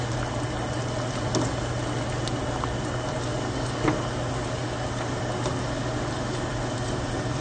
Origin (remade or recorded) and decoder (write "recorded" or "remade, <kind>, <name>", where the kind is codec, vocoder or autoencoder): recorded